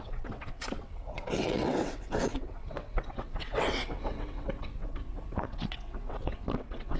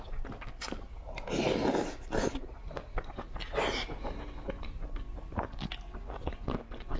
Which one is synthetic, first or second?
first